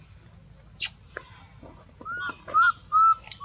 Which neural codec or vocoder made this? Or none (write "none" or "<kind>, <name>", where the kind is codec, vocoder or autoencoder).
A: none